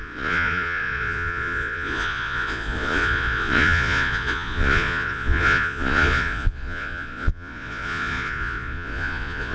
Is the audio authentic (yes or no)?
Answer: no